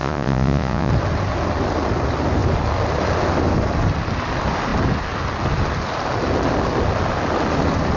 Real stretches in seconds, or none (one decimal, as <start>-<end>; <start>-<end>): 0.9-8.0

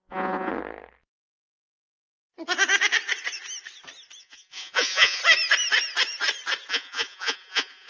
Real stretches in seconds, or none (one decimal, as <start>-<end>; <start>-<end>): 0.5-4.2; 5.2-6.7

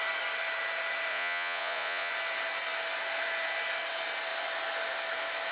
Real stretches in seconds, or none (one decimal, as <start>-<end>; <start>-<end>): 0.0-1.1; 2.1-5.5

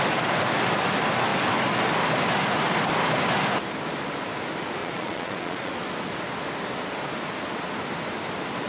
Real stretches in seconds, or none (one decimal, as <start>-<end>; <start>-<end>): 0.0-4.8; 5.7-8.7

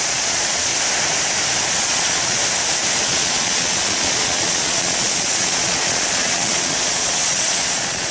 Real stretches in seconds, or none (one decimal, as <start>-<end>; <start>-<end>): 0.7-1.7; 2.4-3.0

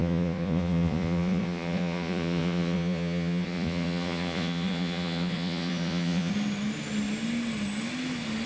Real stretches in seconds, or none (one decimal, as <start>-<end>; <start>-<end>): 6.3-8.5